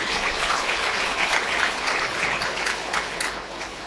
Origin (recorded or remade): remade